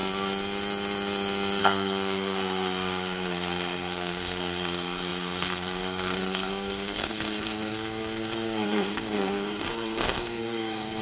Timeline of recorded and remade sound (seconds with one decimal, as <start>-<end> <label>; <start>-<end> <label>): 0.0-1.6 recorded; 1.6-11.0 remade